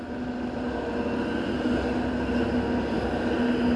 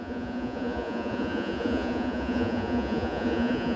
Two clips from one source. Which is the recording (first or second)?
first